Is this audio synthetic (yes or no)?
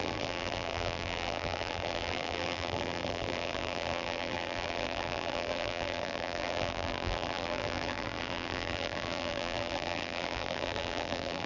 yes